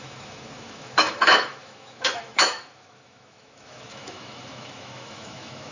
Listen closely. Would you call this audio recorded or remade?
remade